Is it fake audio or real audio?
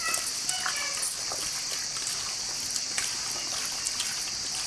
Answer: real